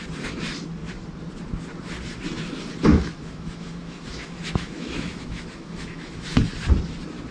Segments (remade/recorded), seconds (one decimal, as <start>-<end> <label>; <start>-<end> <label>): 0.0-2.9 recorded; 2.9-6.4 remade; 6.4-7.3 recorded